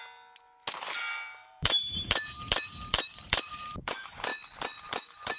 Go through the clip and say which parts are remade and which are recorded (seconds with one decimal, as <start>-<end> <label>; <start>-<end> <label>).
0.0-1.0 recorded; 1.0-4.3 remade; 4.3-4.8 recorded; 4.8-5.4 remade